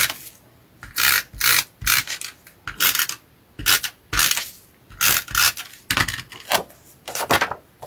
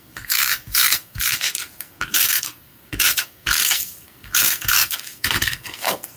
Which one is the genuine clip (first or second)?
first